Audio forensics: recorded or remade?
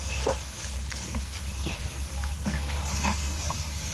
remade